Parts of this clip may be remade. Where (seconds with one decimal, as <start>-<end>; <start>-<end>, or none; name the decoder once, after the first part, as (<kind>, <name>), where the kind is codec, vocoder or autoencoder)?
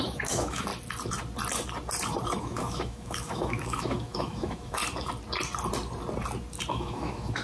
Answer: 0.0-0.7 (autoencoder, DAC-VAE); 2.4-4.8; 6.7-7.4